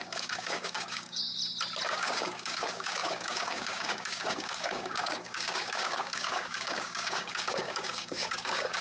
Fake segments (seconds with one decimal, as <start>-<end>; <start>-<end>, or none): 0.0-1.4; 1.9-8.8